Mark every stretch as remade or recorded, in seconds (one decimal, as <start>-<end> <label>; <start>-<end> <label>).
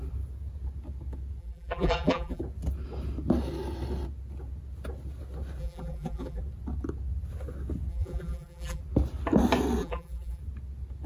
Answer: 0.0-1.4 recorded; 1.4-2.4 remade; 2.4-5.6 recorded; 5.6-6.4 remade; 6.4-7.9 recorded; 7.9-8.8 remade; 8.8-9.8 recorded; 9.8-10.4 remade; 10.4-11.1 recorded